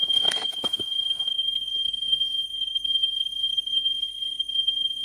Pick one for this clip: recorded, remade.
remade